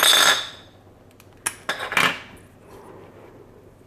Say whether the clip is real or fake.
real